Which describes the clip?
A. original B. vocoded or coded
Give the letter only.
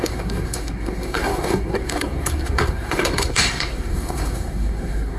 B